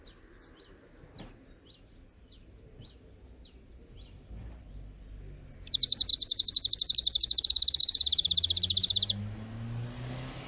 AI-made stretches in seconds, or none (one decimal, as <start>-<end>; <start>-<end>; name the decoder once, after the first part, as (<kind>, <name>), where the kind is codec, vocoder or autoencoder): none